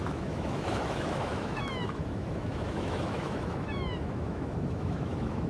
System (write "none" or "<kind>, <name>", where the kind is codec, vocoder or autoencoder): autoencoder, DAC-VAE